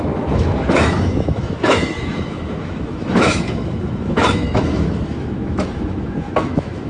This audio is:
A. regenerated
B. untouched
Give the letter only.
A